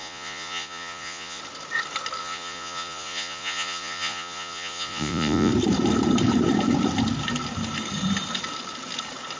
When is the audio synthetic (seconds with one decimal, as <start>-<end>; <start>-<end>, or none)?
0.0-1.4; 2.2-5.5